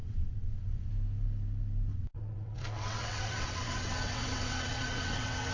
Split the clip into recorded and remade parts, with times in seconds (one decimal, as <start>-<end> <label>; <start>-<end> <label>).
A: 0.0-0.9 remade; 0.9-1.9 recorded; 1.9-5.5 remade